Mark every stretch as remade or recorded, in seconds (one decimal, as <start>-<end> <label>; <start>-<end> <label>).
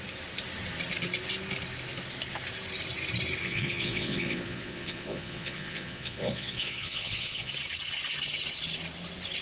0.0-3.4 recorded; 3.4-7.5 remade; 7.5-9.4 recorded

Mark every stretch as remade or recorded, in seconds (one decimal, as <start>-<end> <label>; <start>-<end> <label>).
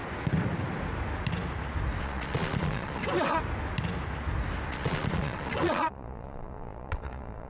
0.0-2.0 recorded; 2.0-3.0 remade; 3.0-4.7 recorded; 4.7-7.5 remade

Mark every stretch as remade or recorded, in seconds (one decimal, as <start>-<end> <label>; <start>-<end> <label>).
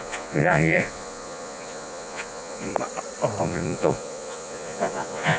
0.0-2.7 remade; 2.7-3.4 recorded; 3.4-5.4 remade